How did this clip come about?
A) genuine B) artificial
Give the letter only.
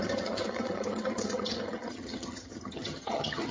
B